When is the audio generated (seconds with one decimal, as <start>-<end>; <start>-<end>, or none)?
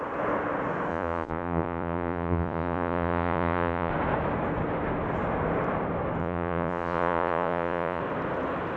0.9-3.9; 6.2-8.0